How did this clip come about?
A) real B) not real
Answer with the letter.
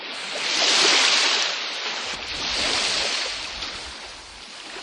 A